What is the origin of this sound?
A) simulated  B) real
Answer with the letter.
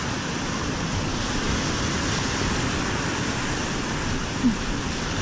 B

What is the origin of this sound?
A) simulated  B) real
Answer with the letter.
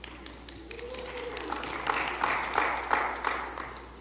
B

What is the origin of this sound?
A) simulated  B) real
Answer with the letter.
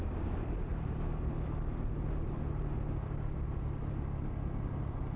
B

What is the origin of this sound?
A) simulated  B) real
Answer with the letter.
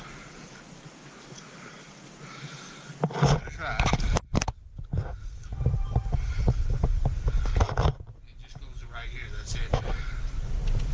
B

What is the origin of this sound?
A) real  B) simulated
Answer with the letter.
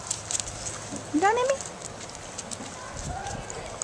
A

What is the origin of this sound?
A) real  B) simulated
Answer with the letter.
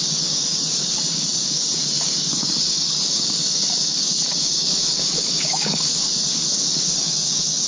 B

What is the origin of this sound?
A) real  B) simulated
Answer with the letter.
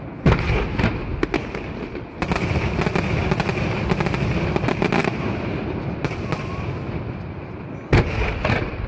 A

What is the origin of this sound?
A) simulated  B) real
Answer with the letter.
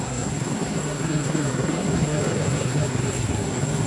A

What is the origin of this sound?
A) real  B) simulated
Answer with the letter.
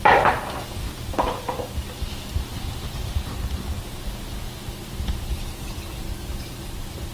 B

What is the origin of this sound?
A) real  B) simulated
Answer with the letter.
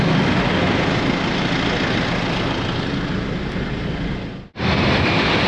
A